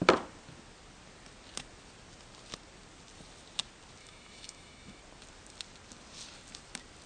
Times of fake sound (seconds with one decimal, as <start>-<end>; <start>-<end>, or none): 4.0-5.0